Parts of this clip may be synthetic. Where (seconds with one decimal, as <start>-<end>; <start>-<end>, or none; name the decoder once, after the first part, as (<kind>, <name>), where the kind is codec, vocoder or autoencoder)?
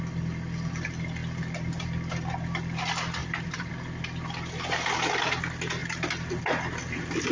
3.2-3.7 (vocoder, BigVGAN v2)